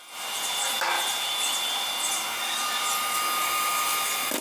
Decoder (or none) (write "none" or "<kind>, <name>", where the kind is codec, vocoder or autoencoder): vocoder, BigVGAN v2